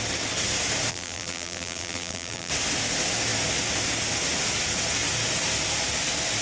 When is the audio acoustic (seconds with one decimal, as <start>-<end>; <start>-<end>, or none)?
0.0-0.9; 2.5-6.4